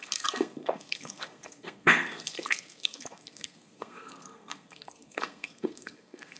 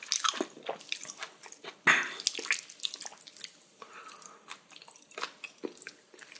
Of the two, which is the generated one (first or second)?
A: first